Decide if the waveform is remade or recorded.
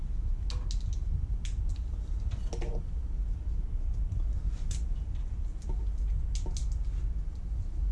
recorded